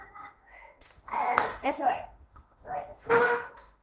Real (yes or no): no